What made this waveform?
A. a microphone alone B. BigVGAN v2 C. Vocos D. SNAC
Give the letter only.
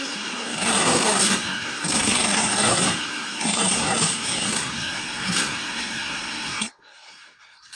D